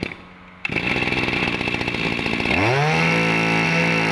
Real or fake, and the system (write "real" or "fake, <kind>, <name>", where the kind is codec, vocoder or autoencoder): real